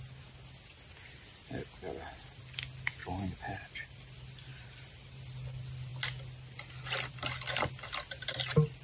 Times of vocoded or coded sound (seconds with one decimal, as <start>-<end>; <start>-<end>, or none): 3.0-3.5; 4.5-5.2